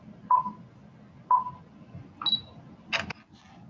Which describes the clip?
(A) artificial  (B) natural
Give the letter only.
B